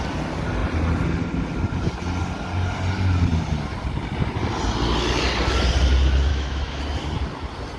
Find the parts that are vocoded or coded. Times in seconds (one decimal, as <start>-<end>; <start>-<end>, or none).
6.3-6.8